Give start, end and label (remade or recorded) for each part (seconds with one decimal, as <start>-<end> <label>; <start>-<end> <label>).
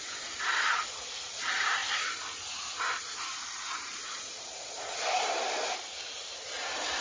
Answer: 0.0-7.0 remade